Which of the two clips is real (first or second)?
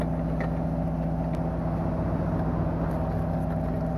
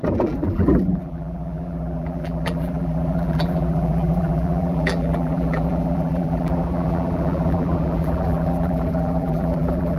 first